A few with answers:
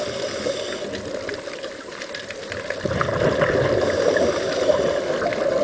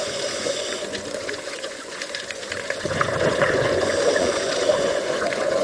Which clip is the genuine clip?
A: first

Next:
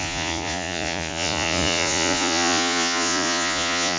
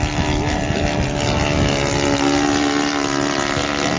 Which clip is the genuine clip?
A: second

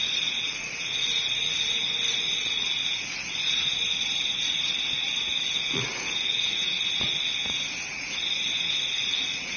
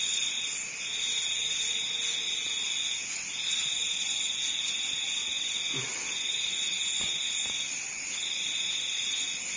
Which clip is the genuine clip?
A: second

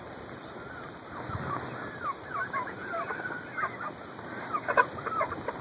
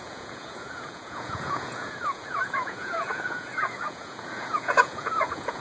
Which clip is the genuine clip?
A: first